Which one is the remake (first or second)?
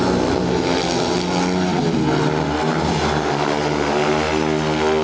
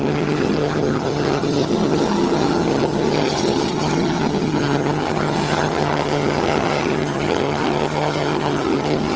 second